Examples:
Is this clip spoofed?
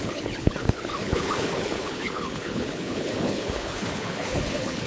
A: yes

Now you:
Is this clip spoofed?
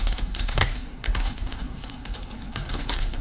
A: yes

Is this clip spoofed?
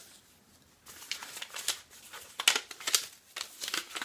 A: no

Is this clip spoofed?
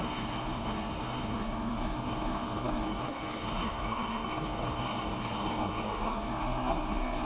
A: yes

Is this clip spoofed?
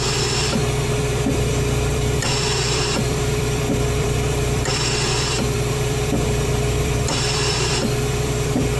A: yes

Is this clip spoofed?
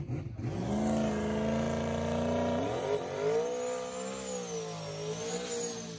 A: no